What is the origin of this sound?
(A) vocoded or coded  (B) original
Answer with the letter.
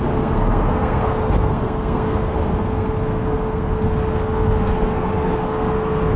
A